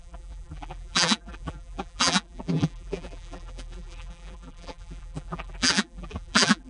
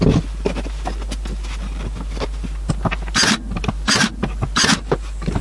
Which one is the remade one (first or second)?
first